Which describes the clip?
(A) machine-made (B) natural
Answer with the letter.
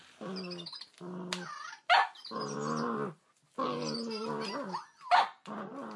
B